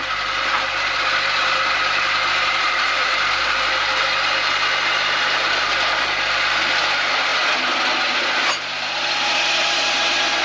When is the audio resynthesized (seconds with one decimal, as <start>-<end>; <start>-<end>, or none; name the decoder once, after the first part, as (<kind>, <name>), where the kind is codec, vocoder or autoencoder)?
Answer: 0.0-7.3 (vocoder, BigVGAN v2)